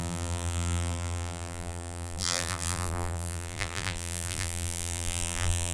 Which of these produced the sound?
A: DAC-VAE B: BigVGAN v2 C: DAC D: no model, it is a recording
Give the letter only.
B